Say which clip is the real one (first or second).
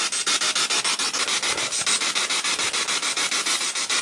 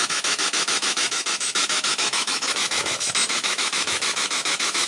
first